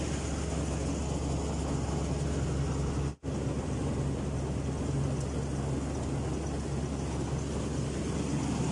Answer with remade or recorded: recorded